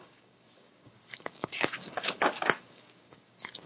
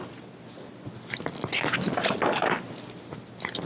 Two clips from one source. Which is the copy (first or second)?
first